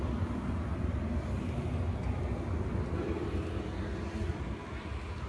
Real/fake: real